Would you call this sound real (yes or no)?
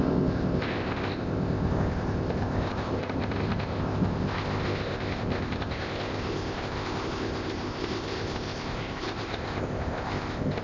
no